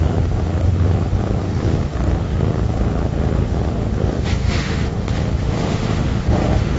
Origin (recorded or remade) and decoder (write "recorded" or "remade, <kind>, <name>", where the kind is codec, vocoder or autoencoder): remade, autoencoder, DAC-VAE